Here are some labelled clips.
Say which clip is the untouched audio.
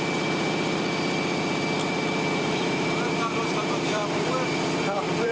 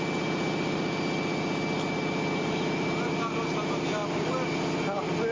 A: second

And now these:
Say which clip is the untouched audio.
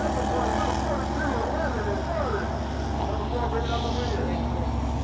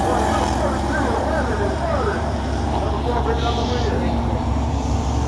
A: first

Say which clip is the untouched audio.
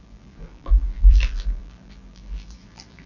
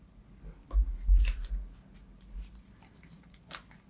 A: second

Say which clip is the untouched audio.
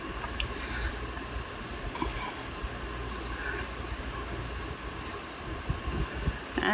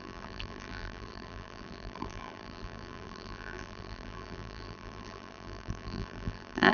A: first